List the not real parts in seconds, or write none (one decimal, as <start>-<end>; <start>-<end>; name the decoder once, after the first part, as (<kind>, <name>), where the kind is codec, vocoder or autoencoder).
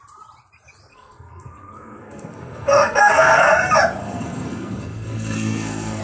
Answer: 0.9-3.5 (codec, SNAC); 4.0-6.0